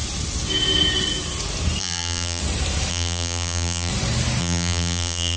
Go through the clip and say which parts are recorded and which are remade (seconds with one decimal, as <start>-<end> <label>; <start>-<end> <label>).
0.0-1.8 recorded; 1.8-2.4 remade; 2.4-2.9 recorded; 2.9-3.9 remade; 3.9-4.4 recorded; 4.4-5.4 remade